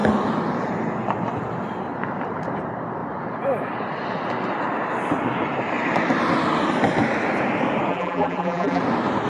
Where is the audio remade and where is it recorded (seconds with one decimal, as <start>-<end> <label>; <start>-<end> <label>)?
0.0-7.9 recorded; 7.9-8.8 remade; 8.8-9.3 recorded